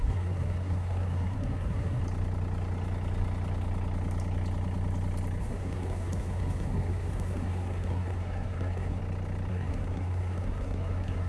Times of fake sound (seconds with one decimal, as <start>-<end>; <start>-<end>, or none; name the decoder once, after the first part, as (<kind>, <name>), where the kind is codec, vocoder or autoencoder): 0.0-2.0 (codec, SNAC); 5.4-9.0; 9.5-11.3